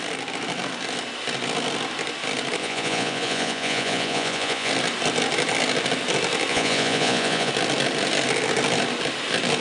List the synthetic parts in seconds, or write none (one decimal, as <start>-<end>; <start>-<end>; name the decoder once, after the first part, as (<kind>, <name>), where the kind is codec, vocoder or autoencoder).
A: 2.6-4.7 (vocoder, Vocos); 6.5-7.5